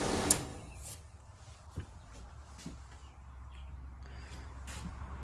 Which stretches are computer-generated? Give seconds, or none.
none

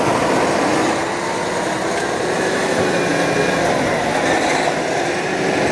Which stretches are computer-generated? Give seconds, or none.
none

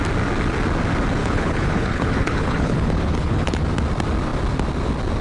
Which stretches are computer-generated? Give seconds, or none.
1.2-3.6 (codec, HILCodec)

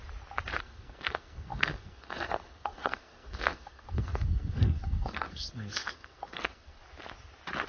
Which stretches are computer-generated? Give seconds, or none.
0.6-6.8 (codec, SNAC)

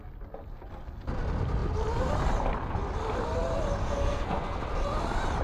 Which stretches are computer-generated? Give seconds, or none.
3.8-4.6 (codec, SNAC)

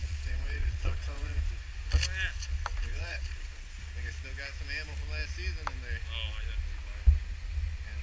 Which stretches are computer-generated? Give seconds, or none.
0.0-1.4 (vocoder, Vocos); 2.9-3.8